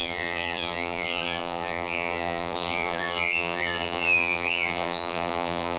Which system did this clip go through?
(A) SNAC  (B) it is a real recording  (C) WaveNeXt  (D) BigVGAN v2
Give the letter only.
D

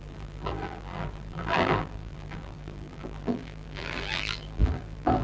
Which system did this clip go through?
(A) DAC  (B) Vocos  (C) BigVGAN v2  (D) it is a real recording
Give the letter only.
C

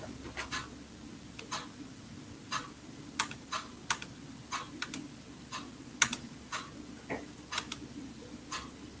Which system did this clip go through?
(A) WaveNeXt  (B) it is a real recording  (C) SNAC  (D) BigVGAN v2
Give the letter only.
B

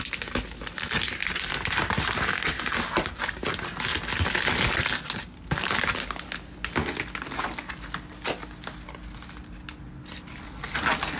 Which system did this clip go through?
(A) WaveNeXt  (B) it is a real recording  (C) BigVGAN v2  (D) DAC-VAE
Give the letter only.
B